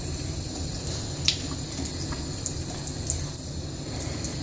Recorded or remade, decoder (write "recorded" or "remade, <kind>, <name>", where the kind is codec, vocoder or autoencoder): recorded